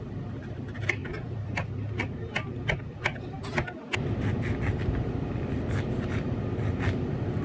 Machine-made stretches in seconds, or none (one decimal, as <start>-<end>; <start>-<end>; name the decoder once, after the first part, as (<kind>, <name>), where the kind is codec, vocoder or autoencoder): 0.0-1.0 (vocoder, BigVGAN v2); 4.7-7.4